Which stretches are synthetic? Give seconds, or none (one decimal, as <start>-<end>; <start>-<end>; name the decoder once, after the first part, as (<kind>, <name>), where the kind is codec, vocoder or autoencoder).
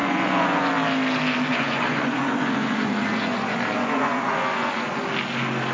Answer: 0.0-0.7 (vocoder, Vocos); 1.5-4.9